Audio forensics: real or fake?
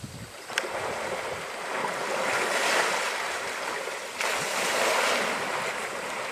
real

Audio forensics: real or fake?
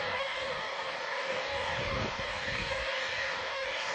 fake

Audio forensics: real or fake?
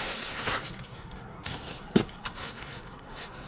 fake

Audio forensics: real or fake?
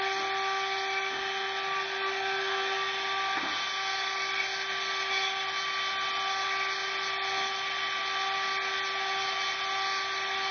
real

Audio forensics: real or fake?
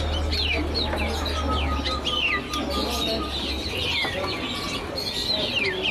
real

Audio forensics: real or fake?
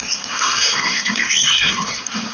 fake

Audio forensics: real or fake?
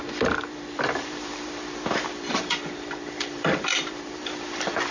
fake